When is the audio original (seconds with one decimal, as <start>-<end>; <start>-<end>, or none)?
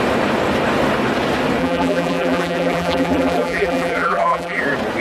0.0-1.6; 4.6-5.0